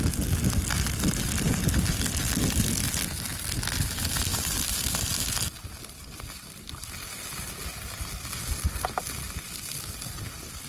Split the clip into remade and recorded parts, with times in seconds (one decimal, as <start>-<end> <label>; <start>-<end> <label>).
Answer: 0.0-4.3 recorded; 4.3-5.1 remade; 5.1-10.7 recorded